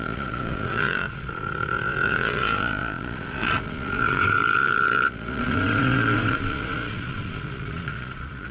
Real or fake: fake